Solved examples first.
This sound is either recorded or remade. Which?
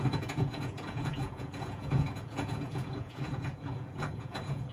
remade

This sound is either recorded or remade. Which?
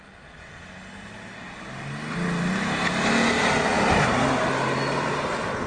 recorded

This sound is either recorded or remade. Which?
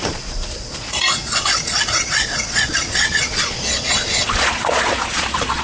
remade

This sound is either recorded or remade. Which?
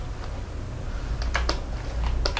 recorded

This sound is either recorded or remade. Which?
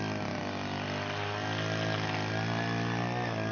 recorded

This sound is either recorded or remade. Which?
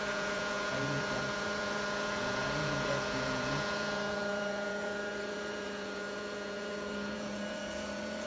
remade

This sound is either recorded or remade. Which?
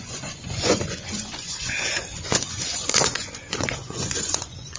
remade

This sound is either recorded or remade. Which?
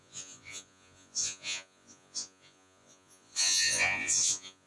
remade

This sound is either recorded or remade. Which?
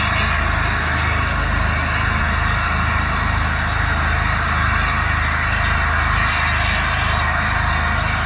recorded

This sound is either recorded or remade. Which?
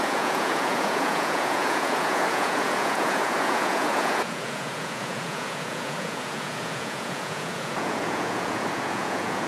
remade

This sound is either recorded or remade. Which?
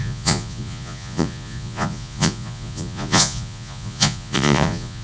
remade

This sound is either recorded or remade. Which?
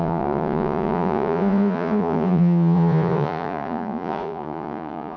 remade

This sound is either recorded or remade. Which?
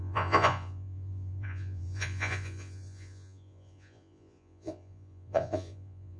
remade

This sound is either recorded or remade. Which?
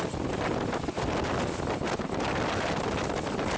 recorded